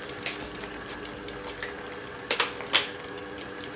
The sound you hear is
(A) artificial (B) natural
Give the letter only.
B